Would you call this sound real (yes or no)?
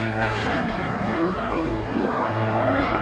no